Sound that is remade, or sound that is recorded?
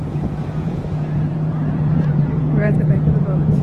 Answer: remade